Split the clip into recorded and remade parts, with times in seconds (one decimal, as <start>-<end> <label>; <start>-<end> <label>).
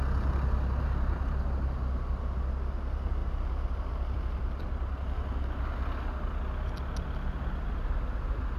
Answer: 0.0-3.2 recorded; 3.2-5.4 remade; 5.4-8.6 recorded